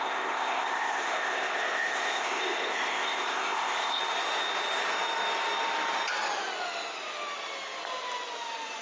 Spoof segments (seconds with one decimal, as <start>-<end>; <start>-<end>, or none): 0.0-4.0